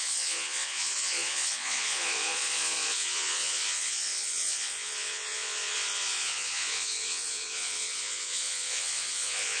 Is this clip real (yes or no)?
no